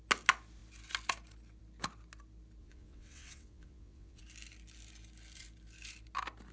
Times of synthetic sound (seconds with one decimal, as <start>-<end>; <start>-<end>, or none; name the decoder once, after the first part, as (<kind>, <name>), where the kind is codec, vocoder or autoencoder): 2.6-4.2 (vocoder, WaveNeXt)

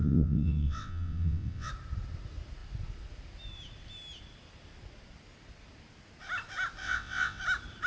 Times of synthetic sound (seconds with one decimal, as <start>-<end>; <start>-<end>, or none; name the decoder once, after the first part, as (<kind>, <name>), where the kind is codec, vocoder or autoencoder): 0.0-1.7 (vocoder, WaveNeXt); 6.8-7.4

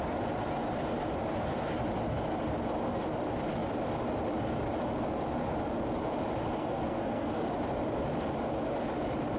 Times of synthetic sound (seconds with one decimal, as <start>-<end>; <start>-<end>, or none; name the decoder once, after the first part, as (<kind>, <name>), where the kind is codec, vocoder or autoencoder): 6.6-7.5 (codec, SNAC)

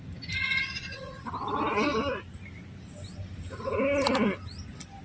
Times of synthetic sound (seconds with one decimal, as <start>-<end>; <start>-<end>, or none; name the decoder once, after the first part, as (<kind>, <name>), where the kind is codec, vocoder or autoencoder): 0.4-1.3 (vocoder, Vocos)

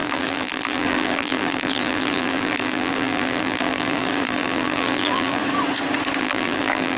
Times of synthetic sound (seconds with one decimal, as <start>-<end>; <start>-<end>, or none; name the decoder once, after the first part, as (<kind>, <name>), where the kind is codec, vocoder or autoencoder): 0.0-5.4 (vocoder, BigVGAN v2); 6.2-7.0

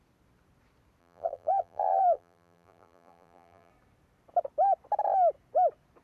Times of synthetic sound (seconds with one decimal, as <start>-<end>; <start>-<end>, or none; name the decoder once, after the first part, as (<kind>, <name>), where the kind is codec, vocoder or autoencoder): 1.0-3.7 (vocoder, BigVGAN v2)

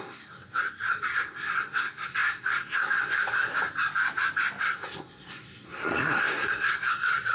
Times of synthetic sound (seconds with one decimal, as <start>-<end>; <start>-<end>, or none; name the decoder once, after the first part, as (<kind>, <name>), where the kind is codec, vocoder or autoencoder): 0.0-3.5 (codec, SNAC); 4.6-7.3

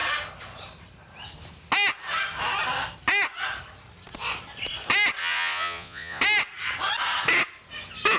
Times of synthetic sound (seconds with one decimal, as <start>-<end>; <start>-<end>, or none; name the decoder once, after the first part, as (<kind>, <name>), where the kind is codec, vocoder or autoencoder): 5.2-6.2 (vocoder, Vocos)